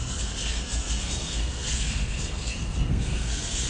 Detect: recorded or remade remade